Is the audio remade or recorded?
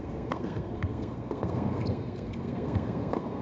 remade